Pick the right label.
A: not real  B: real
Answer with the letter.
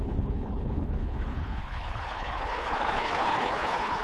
A